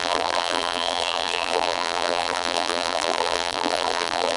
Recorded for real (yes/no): no